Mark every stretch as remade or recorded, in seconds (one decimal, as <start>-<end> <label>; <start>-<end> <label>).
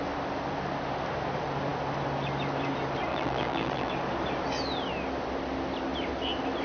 0.0-3.1 recorded; 3.1-3.9 remade; 3.9-6.6 recorded